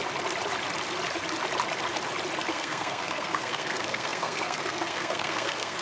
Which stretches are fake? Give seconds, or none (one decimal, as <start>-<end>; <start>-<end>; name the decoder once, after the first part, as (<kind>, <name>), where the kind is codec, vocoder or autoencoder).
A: 2.5-5.8 (codec, SNAC)